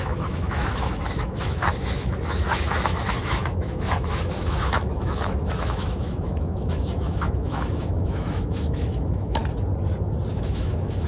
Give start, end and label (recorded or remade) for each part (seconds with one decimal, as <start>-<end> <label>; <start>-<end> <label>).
0.0-9.4 remade; 9.4-10.3 recorded; 10.3-11.1 remade